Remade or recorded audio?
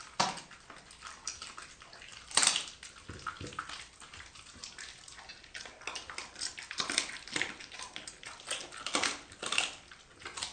recorded